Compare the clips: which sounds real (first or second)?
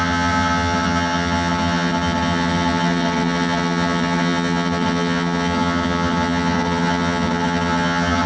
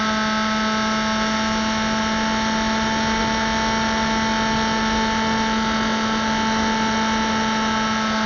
second